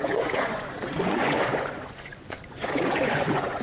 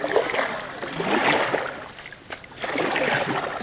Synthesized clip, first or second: first